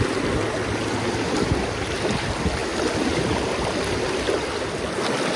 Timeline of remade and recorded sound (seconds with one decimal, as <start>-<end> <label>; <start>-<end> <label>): 0.0-2.6 recorded; 2.6-5.0 remade; 5.0-5.4 recorded